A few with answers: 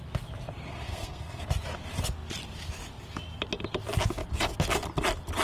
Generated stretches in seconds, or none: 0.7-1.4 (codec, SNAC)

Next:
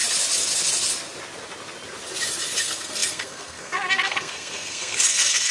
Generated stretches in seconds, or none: 2.6-5.5 (codec, SNAC)

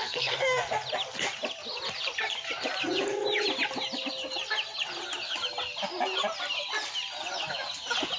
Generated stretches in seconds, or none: 0.0-0.6 (codec, SNAC)

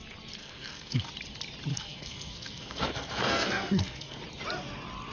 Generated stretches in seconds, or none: 0.4-1.1 (codec, SNAC); 1.7-4.2

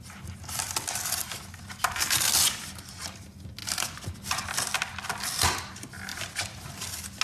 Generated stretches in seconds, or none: none

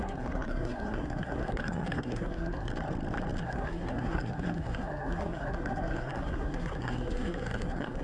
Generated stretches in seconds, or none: 0.0-2.7 (codec, SNAC); 3.4-8.0

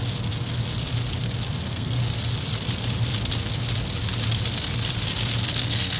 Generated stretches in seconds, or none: 1.6-2.0 (codec, SNAC); 5.5-6.0

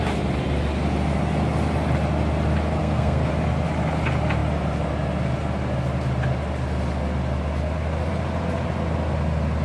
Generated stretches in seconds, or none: 2.8-3.3 (codec, SNAC)